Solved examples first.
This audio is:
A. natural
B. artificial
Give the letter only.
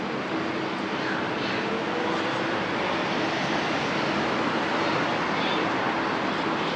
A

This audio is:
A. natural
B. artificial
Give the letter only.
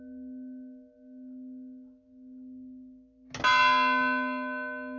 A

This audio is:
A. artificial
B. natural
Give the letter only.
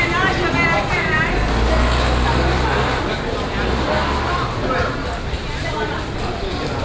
B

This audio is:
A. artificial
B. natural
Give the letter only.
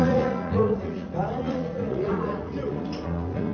A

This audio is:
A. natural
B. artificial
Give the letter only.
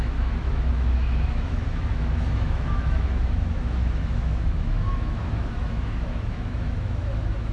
B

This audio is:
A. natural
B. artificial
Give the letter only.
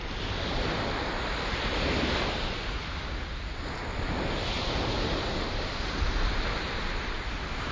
A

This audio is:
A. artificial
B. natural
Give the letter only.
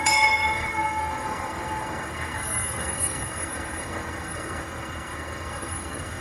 A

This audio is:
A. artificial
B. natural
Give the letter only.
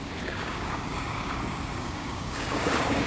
A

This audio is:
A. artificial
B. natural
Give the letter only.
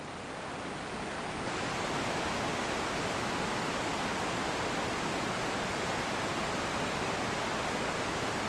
B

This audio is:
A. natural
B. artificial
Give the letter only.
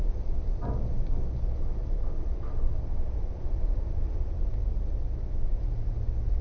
A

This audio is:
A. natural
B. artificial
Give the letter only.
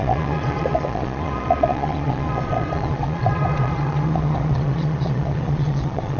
B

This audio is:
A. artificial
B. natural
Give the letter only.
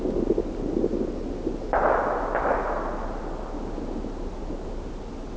B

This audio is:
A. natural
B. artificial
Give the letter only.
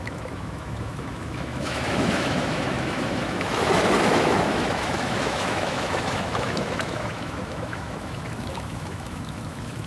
B